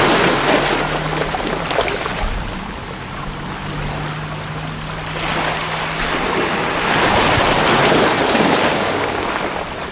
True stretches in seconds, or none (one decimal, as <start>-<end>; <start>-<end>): 0.0-8.7; 9.4-9.9